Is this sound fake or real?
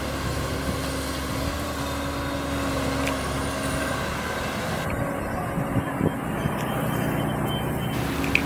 real